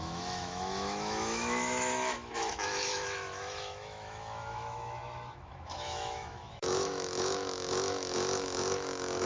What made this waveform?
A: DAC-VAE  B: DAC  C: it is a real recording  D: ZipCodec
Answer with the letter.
A